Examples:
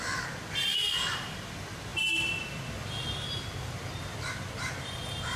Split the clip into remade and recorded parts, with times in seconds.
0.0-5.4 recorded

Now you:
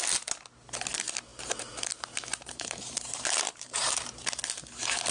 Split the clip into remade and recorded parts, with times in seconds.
0.0-1.3 recorded; 1.3-4.4 remade; 4.4-5.1 recorded

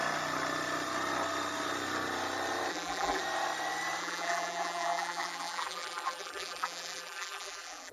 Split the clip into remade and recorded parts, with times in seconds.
0.0-2.7 recorded; 2.7-3.2 remade; 3.2-4.0 recorded; 4.0-7.9 remade

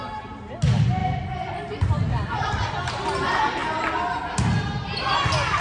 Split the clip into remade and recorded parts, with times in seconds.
0.0-1.0 recorded; 1.0-2.7 remade; 2.7-5.6 recorded

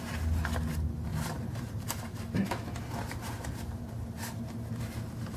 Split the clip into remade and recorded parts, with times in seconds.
0.0-1.1 recorded; 1.1-2.0 remade; 2.0-5.4 recorded

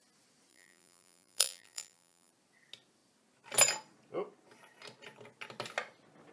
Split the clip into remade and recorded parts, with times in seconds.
0.0-0.5 recorded; 0.5-2.3 remade; 2.3-6.3 recorded

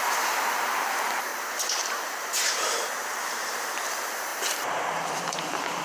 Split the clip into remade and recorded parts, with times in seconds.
0.0-1.3 remade; 1.3-3.9 recorded; 3.9-5.8 remade

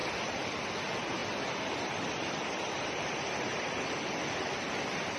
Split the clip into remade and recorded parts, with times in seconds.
0.0-0.6 remade; 0.6-1.2 recorded; 1.2-4.3 remade; 4.3-5.2 recorded